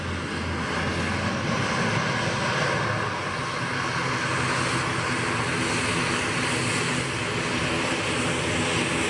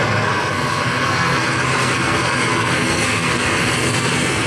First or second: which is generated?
second